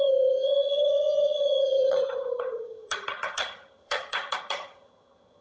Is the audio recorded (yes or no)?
no